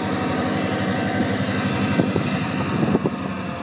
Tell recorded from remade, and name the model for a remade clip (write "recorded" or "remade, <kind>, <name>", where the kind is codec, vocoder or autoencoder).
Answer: recorded